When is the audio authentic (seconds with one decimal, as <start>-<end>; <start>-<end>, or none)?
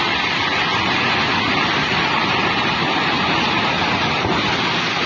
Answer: 0.0-5.1